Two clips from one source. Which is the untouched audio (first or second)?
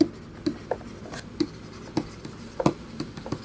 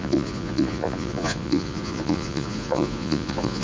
first